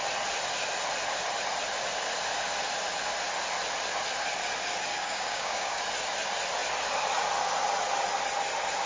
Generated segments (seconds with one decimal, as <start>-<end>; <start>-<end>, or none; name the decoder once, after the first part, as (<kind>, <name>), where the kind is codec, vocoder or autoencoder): 4.9-5.8 (codec, DAC)